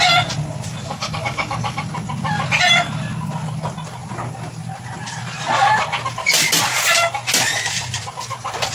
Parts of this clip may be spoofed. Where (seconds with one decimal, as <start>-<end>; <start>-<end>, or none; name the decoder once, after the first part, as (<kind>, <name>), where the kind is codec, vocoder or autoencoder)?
0.8-1.8 (codec, DAC)